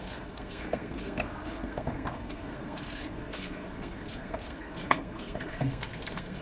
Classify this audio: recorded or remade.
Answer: remade